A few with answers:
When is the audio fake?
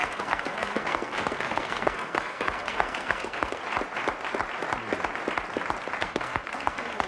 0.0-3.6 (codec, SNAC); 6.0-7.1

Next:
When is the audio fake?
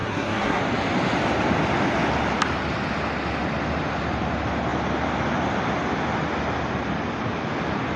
0.0-0.6 (codec, SNAC)